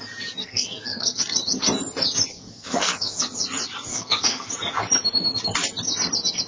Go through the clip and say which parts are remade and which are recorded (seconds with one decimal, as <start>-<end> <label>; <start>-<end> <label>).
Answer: 0.0-0.4 recorded; 0.4-1.2 remade; 1.2-2.3 recorded; 2.3-3.2 remade; 3.2-3.9 recorded; 3.9-4.5 remade; 4.5-6.5 recorded